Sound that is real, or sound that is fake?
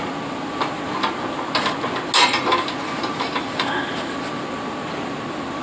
real